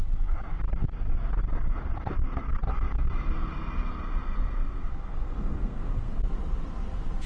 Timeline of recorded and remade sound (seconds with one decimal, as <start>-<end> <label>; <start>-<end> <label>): 0.0-4.9 recorded; 4.9-6.1 remade; 6.1-7.3 recorded